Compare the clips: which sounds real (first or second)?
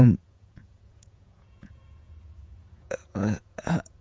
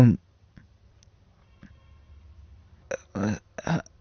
second